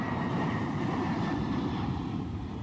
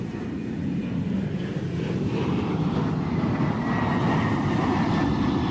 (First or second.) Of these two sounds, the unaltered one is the second